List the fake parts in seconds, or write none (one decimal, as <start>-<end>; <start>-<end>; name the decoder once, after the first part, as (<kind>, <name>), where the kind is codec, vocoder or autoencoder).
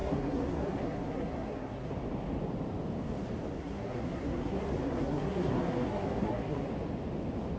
0.0-1.9 (codec, SNAC); 3.6-6.7